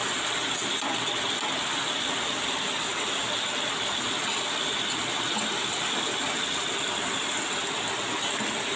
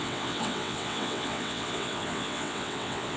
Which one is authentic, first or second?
first